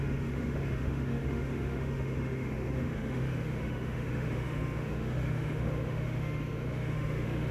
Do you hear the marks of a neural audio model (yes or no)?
yes